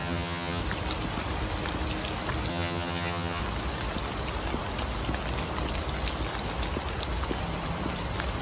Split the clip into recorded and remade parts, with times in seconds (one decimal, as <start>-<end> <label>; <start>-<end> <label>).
0.0-0.6 remade; 0.6-2.5 recorded; 2.5-3.4 remade; 3.4-8.4 recorded

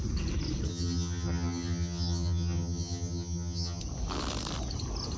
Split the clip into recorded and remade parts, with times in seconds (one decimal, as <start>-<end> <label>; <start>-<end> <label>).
0.0-0.7 recorded; 0.7-3.8 remade; 3.8-5.2 recorded

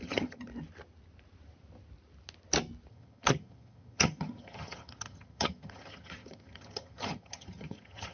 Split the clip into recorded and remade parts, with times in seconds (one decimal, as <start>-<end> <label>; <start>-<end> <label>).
0.0-0.5 remade; 0.5-2.9 recorded; 2.9-8.1 remade

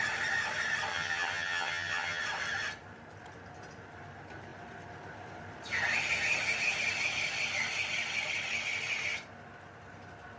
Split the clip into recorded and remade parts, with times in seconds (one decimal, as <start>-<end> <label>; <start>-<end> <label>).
0.0-0.9 recorded; 0.9-2.2 remade; 2.2-10.4 recorded

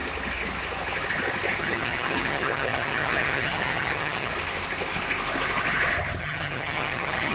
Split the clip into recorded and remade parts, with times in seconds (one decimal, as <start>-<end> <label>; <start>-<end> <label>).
0.0-1.6 recorded; 1.6-4.3 remade; 4.3-6.2 recorded; 6.2-7.3 remade

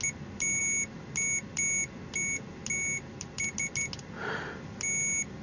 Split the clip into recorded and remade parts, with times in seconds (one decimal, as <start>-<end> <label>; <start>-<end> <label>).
0.0-5.4 recorded